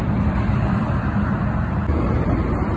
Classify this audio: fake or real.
real